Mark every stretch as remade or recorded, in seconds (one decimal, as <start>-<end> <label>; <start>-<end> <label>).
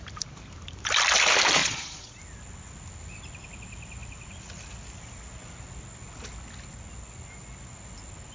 0.0-1.6 recorded; 1.6-2.2 remade; 2.2-8.3 recorded